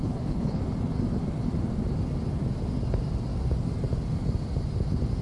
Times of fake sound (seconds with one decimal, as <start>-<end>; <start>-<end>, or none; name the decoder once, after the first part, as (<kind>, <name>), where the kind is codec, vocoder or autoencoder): 0.0-0.6 (codec, HILCodec)

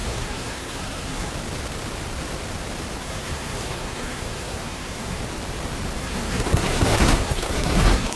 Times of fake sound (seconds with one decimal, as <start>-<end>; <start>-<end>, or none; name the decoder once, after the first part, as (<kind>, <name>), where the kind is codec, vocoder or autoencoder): 0.0-1.3 (codec, SNAC); 3.0-5.2; 6.0-8.2